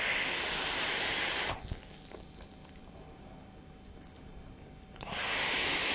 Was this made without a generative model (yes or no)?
yes